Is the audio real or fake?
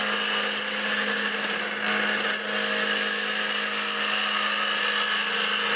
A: real